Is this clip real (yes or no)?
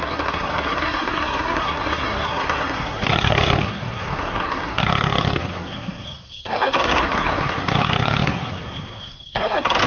no